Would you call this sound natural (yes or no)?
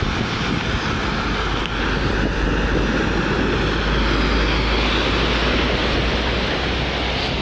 yes